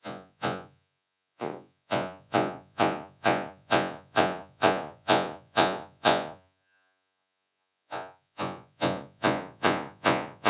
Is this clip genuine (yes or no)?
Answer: no